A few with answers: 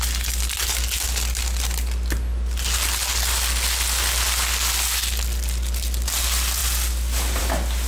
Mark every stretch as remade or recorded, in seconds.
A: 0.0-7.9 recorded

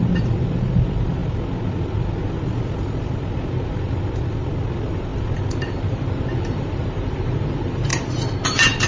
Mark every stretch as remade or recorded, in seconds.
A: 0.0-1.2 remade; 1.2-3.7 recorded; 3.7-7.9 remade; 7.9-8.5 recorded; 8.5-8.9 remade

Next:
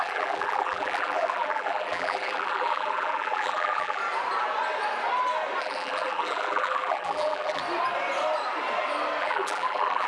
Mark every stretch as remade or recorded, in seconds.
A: 0.0-4.0 remade; 4.0-5.6 recorded; 5.6-7.6 remade; 7.6-9.2 recorded; 9.2-10.1 remade

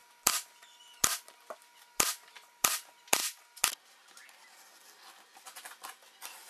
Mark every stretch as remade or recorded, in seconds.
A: 0.0-3.2 remade; 3.2-5.7 recorded; 5.7-6.5 remade

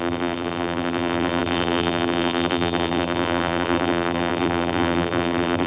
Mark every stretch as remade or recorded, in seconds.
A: 0.0-5.7 remade